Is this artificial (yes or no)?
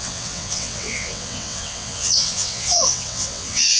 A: yes